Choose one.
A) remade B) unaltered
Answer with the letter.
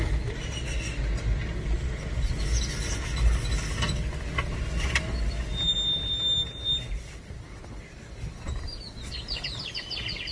B